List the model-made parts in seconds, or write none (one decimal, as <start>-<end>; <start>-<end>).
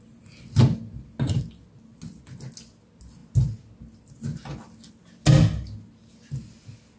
none